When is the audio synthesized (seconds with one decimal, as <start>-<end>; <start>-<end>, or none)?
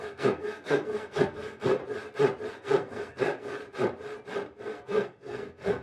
0.0-1.8; 2.5-3.6; 4.6-5.8